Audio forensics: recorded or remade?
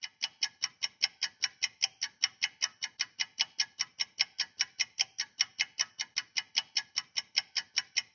recorded